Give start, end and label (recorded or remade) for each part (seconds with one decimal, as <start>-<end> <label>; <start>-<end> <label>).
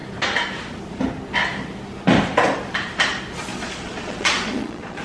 0.0-3.5 recorded; 3.5-5.0 remade